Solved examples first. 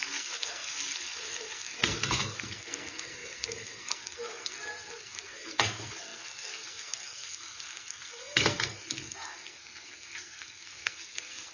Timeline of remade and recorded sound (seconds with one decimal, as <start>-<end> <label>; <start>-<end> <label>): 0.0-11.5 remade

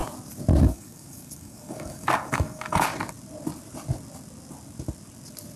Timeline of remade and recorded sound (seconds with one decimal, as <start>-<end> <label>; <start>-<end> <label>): 0.0-0.6 recorded; 0.6-2.9 remade; 2.9-5.6 recorded

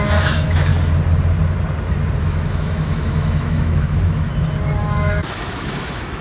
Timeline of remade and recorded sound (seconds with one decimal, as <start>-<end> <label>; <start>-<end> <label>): 0.0-0.7 remade; 0.7-2.2 recorded; 2.2-4.3 remade; 4.3-4.8 recorded; 4.8-6.2 remade

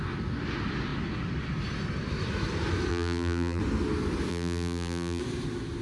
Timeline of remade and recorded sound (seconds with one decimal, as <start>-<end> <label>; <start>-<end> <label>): 0.0-2.9 recorded; 2.9-3.6 remade; 3.6-4.3 recorded; 4.3-5.2 remade; 5.2-5.8 recorded